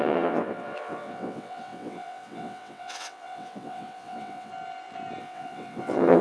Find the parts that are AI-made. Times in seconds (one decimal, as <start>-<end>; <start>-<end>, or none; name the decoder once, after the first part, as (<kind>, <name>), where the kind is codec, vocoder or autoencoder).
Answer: 0.0-4.5 (vocoder, WaveNeXt); 5.2-6.2